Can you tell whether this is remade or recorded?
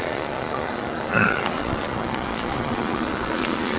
remade